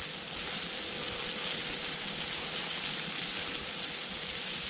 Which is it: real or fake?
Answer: real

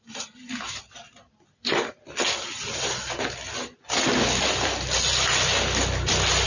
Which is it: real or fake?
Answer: real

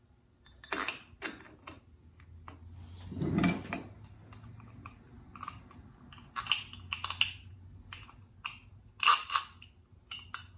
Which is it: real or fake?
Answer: real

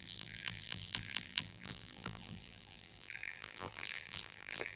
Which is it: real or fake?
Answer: fake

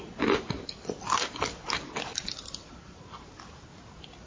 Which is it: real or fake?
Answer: real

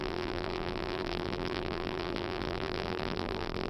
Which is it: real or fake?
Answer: fake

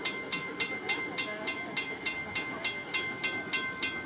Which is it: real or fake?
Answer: real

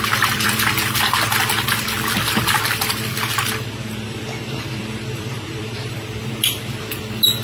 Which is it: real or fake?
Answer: fake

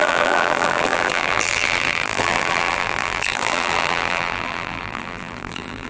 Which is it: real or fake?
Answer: fake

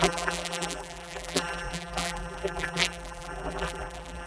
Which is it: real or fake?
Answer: fake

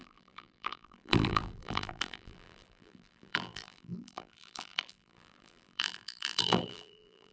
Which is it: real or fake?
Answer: fake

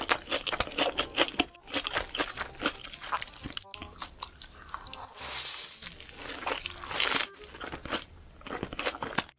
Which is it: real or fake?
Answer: real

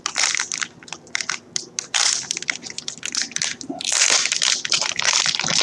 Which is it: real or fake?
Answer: real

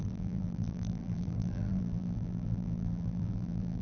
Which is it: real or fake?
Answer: fake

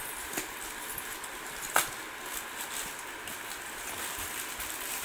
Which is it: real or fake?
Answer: real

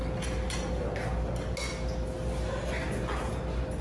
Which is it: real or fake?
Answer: real